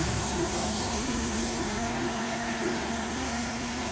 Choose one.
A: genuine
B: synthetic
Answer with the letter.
B